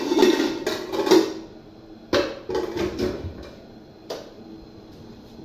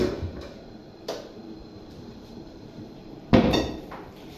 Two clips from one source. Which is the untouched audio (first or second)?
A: first